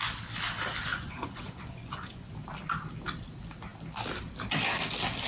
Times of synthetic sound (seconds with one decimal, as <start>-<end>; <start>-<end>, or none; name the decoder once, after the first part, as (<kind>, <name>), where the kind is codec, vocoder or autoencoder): 0.9-2.3 (vocoder, Vocos)